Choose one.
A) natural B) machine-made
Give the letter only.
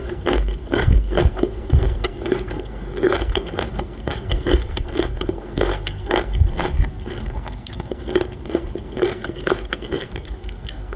B